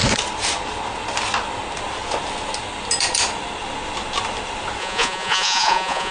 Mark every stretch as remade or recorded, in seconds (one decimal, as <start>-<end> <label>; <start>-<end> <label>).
0.0-4.8 recorded; 4.8-6.1 remade